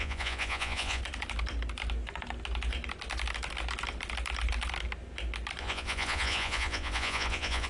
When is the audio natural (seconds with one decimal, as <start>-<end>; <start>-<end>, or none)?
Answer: 1.0-5.6